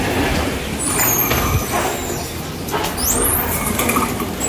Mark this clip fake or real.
real